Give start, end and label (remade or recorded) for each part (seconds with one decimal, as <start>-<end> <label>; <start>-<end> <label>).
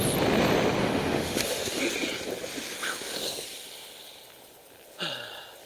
0.0-0.8 recorded; 0.8-1.8 remade; 1.8-5.7 recorded